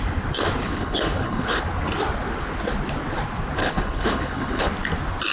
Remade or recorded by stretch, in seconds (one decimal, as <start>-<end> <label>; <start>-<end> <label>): 0.0-0.6 recorded; 0.6-1.6 remade; 1.6-3.6 recorded; 3.6-4.7 remade; 4.7-5.3 recorded